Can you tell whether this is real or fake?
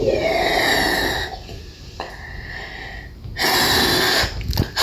real